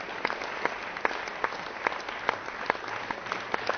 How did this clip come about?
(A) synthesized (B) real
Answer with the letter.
B